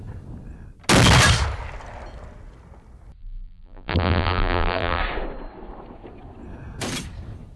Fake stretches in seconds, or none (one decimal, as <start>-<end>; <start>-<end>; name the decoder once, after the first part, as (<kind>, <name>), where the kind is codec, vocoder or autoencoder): 3.2-5.0 (vocoder, BigVGAN v2)